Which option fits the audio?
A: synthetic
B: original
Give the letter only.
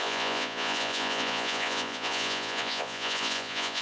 A